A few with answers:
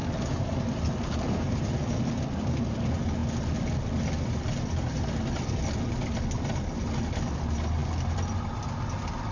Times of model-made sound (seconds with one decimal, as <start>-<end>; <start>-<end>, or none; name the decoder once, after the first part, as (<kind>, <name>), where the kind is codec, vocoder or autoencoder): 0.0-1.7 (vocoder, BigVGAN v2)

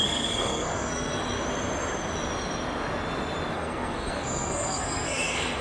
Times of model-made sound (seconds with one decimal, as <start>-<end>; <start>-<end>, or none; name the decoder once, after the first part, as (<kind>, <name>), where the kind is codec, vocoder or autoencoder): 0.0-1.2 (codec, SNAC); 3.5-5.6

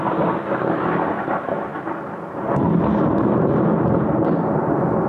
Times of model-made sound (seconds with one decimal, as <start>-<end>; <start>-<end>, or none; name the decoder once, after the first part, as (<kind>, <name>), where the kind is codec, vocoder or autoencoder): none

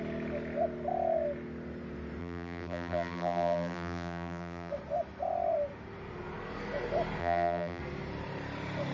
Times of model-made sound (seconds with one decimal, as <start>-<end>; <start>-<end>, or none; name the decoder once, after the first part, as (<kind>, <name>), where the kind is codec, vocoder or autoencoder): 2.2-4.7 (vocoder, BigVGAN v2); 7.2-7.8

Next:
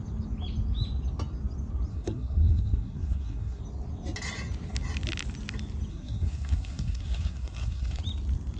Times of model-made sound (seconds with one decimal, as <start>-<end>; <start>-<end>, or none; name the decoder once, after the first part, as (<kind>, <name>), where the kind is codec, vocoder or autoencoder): 1.9-3.6 (codec, SNAC); 5.9-8.0

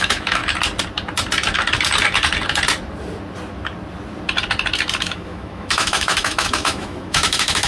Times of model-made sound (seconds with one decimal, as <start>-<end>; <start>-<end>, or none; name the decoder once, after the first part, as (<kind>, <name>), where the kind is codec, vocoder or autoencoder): 0.0-0.4 (autoencoder, DAC-VAE); 5.0-7.7

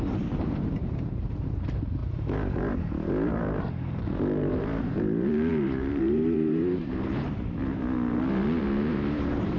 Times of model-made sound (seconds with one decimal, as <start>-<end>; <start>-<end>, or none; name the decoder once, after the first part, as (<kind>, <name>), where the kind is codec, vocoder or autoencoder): 0.0-7.6 (vocoder, BigVGAN v2); 8.6-9.6

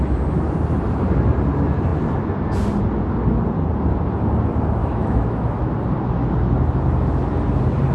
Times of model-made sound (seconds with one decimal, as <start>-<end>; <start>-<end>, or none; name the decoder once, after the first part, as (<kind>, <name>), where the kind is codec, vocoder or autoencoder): 4.8-5.7 (autoencoder, DAC-VAE)